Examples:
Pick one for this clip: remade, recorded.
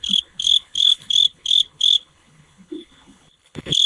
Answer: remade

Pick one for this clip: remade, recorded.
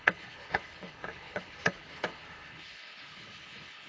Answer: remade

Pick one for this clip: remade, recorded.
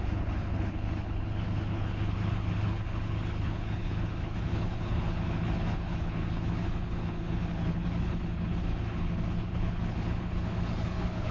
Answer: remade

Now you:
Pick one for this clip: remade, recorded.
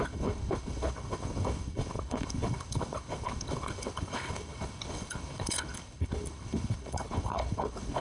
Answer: remade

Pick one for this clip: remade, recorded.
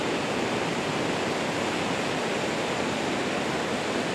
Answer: recorded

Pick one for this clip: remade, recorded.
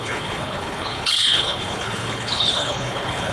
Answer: remade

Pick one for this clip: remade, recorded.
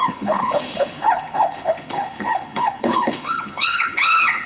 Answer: remade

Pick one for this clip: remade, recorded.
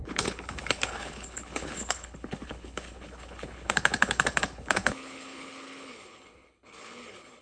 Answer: remade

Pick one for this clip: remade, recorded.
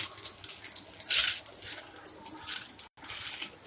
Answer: recorded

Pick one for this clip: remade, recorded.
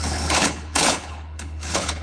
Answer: remade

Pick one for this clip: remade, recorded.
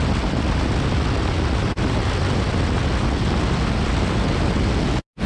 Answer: recorded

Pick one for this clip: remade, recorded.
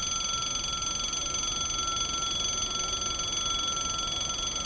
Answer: recorded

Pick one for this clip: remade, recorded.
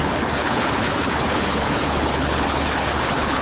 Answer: remade